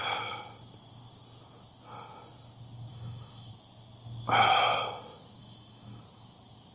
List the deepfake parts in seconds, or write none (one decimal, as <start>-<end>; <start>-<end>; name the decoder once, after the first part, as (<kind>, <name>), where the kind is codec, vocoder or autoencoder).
2.9-3.5 (autoencoder, DAC-VAE); 5.4-6.0